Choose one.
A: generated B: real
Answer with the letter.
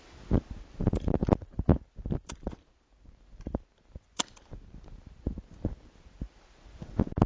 B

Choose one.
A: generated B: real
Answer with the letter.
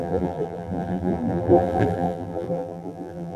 A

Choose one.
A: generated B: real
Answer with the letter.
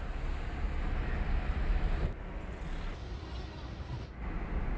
B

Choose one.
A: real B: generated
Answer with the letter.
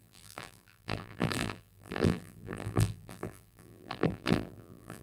B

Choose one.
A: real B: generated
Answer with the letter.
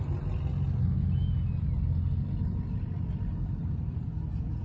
A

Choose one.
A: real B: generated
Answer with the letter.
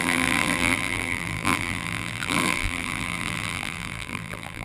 B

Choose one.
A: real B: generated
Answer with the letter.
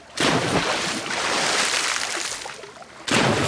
A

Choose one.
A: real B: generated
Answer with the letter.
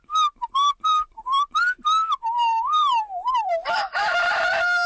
B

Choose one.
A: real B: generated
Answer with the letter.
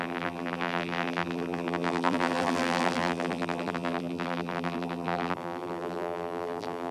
B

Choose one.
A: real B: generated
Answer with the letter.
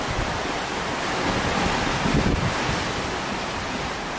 A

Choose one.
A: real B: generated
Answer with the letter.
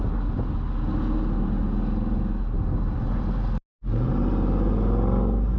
A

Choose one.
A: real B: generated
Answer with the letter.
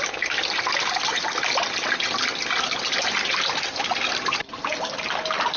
A